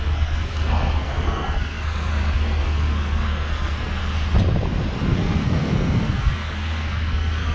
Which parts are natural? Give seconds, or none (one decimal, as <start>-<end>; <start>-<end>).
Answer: 4.0-5.0